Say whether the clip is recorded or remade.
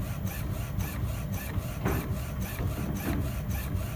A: recorded